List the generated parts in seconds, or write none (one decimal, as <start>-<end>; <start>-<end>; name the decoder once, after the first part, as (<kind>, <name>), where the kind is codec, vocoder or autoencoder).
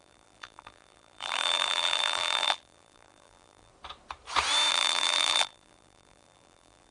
0.0-3.7 (vocoder, BigVGAN v2); 4.7-6.9